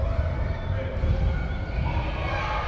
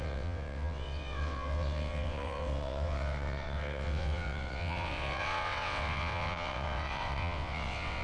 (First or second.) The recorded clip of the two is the first